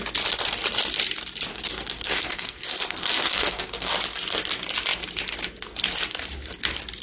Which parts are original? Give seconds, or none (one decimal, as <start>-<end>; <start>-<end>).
0.0-1.5; 3.9-7.0